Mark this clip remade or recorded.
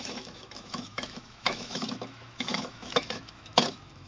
remade